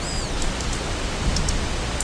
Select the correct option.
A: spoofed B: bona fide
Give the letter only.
B